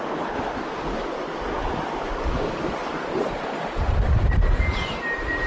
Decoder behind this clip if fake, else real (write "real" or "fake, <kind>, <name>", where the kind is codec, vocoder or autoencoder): real